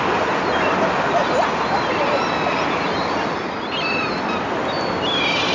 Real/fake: real